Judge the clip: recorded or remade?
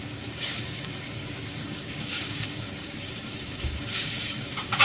remade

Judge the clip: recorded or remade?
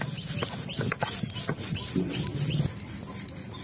recorded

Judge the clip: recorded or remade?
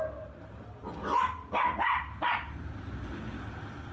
recorded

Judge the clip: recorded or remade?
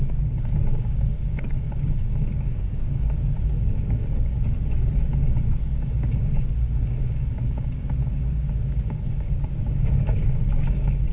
remade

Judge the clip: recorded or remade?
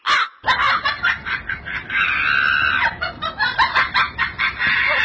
recorded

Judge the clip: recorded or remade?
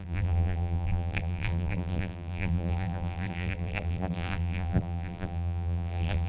remade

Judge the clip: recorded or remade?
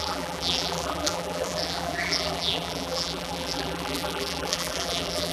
remade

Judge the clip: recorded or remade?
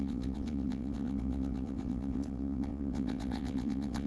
remade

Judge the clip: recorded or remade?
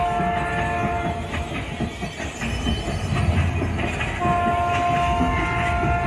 recorded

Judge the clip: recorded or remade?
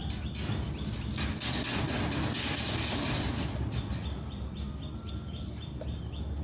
recorded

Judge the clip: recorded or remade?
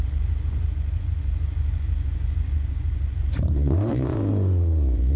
remade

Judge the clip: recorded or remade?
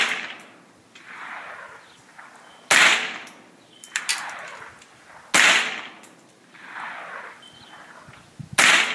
recorded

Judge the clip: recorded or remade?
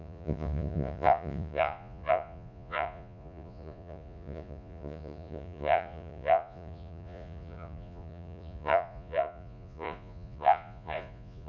remade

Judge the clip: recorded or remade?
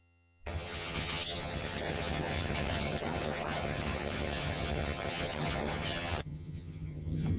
remade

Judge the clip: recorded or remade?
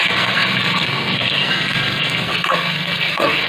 remade